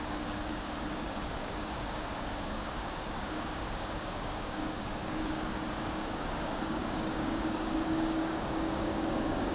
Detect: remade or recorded remade